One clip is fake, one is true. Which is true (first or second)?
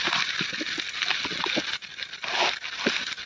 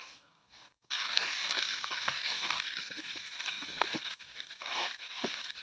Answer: first